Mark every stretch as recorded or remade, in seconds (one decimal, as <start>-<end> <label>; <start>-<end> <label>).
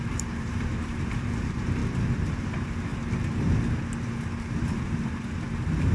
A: 0.0-1.8 remade; 1.8-2.3 recorded; 2.3-2.9 remade; 2.9-4.6 recorded; 4.6-5.9 remade